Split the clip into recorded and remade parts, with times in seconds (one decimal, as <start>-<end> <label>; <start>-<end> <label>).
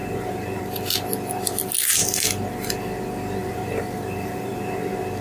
0.0-0.6 remade; 0.6-3.4 recorded; 3.4-4.5 remade; 4.5-5.2 recorded